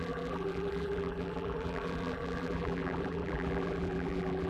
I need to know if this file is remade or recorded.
remade